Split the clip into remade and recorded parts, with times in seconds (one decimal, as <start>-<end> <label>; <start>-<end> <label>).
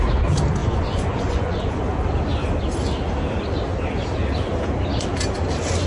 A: 0.0-0.6 recorded; 0.6-1.8 remade; 1.8-5.9 recorded